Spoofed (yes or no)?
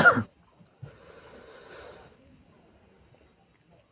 no